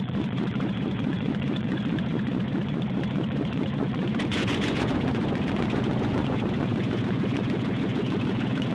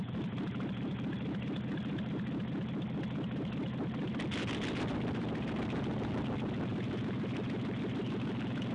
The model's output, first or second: first